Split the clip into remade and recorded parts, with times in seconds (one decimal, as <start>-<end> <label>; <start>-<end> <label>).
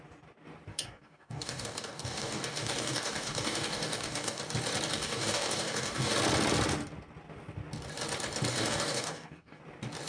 0.0-0.7 recorded; 0.7-4.4 remade; 4.4-4.9 recorded; 4.9-6.1 remade; 6.1-8.5 recorded; 8.5-9.6 remade; 9.6-10.1 recorded